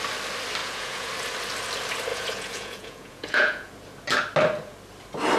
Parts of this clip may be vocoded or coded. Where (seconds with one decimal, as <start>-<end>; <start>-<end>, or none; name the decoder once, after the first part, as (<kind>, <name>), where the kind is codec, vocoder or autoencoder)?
0.6-1.1 (vocoder, Vocos); 2.1-3.7